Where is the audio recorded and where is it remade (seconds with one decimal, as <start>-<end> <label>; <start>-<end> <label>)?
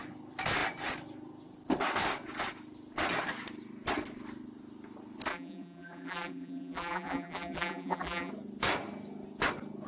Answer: 0.0-5.3 recorded; 5.3-8.3 remade; 8.3-9.9 recorded